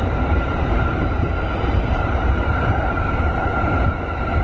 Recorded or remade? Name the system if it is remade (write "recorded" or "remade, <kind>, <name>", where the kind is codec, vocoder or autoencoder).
remade, vocoder, BigVGAN v2